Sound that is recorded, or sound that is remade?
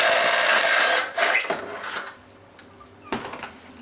recorded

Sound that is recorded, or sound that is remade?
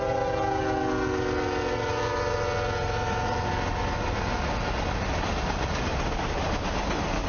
recorded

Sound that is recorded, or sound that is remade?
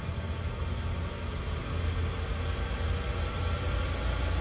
recorded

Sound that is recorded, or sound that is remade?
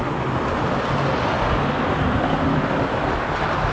recorded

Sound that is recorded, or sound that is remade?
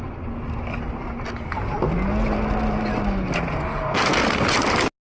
recorded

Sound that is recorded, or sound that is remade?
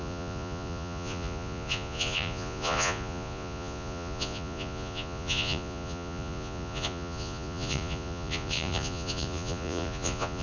remade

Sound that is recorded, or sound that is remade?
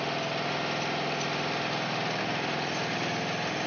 recorded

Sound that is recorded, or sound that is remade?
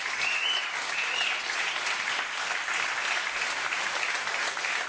recorded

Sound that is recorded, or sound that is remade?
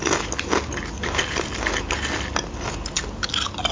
recorded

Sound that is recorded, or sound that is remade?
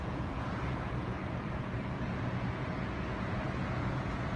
remade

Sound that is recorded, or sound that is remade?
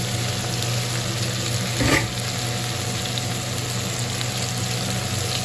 recorded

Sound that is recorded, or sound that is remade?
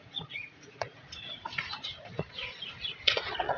remade